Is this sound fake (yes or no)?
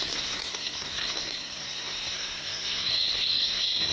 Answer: yes